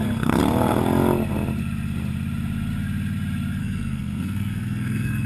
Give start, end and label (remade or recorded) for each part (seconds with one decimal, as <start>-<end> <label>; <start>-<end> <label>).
0.0-0.4 remade; 0.4-3.6 recorded; 3.6-5.3 remade